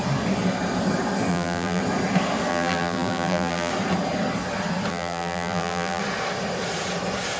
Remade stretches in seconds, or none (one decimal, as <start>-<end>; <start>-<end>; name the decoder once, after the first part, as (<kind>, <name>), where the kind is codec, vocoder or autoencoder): 1.3-1.8 (vocoder, BigVGAN v2); 2.5-3.7; 4.9-6.0